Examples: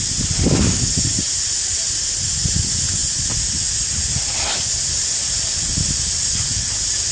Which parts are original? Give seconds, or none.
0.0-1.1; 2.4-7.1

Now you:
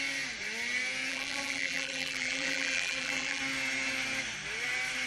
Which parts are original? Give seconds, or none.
0.0-1.1; 3.4-5.1

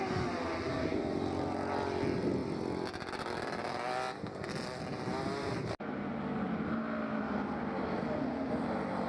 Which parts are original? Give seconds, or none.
0.0-9.1

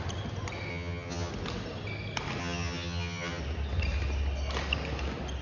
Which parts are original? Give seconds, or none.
0.0-0.7; 1.3-2.4; 3.4-5.4

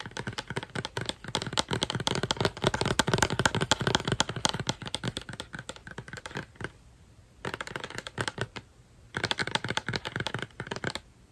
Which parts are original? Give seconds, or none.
0.0-5.8; 7.7-11.3